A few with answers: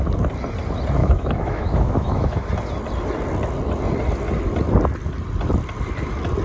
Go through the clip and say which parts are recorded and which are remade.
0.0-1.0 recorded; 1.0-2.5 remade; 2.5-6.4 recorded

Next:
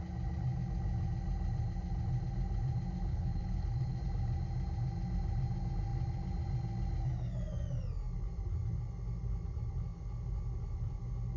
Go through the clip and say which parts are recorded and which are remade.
0.0-3.1 recorded; 3.1-4.0 remade; 4.0-11.4 recorded

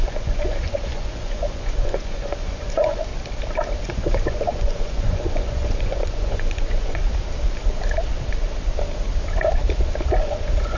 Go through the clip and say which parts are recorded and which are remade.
0.0-3.1 remade; 3.1-3.8 recorded; 3.8-7.0 remade; 7.0-10.2 recorded; 10.2-10.8 remade